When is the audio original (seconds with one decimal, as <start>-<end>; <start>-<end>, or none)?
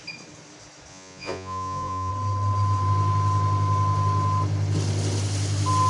0.0-0.9; 2.1-5.9